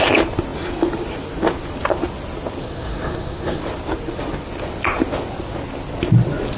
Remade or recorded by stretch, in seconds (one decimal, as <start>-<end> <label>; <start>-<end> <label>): 0.0-2.6 recorded; 2.6-3.6 remade; 3.6-6.6 recorded